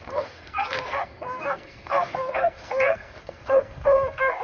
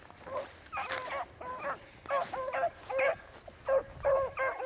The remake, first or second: first